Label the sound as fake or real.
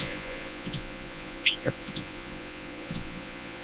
fake